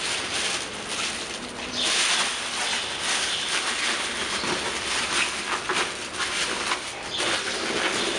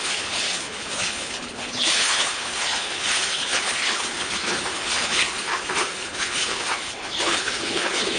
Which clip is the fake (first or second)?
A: second